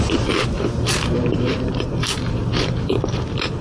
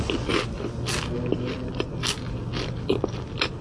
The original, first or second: second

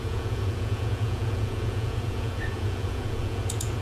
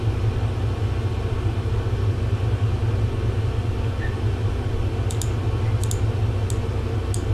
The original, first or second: second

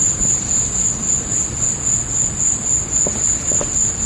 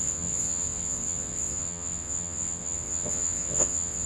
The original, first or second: first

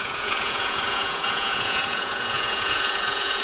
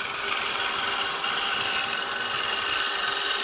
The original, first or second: second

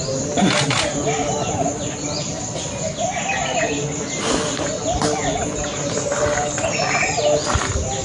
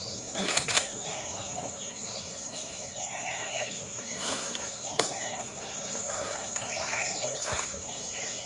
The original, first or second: first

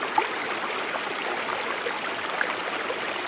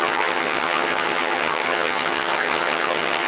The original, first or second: first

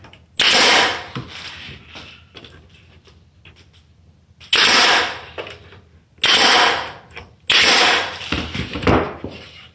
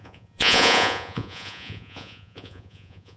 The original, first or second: first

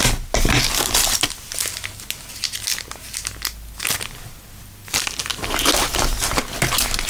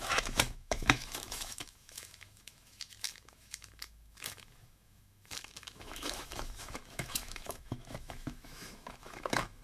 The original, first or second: first